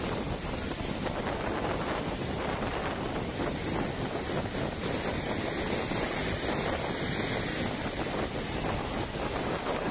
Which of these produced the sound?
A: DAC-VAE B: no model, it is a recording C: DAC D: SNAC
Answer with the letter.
B